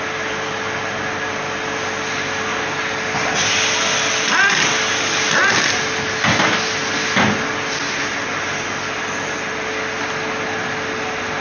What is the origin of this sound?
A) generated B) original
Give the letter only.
B